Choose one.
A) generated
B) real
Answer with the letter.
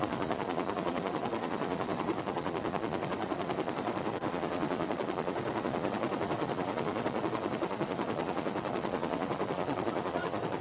A